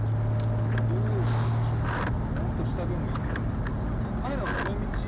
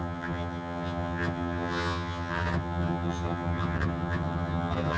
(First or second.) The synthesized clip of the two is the second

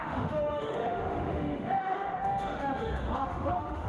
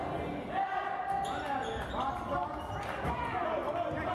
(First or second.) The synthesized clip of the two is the first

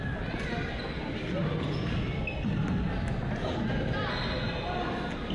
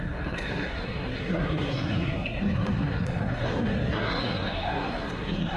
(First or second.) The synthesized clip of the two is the second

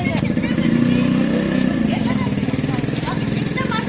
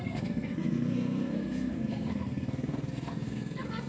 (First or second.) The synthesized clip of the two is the second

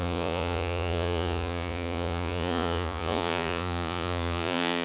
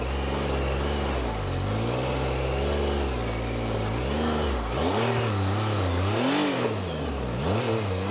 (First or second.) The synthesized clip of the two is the first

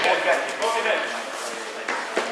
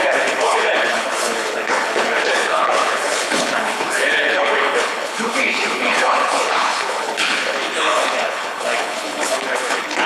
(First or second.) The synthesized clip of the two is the second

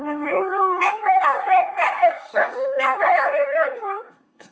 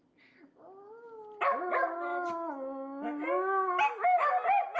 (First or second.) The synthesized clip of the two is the first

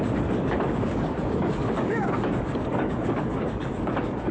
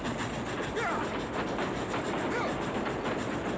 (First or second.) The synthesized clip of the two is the first